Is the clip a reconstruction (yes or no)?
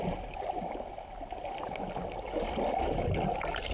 no